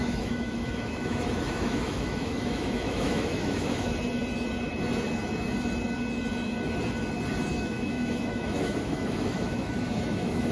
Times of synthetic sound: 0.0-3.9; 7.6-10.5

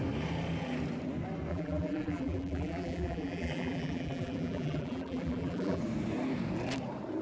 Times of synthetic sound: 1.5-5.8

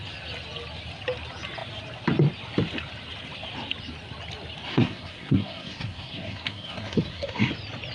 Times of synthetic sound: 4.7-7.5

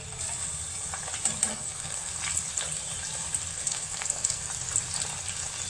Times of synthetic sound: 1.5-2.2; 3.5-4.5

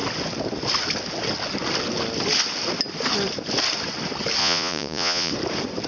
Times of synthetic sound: 4.4-5.3

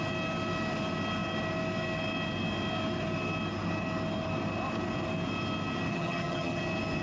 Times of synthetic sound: 5.9-6.6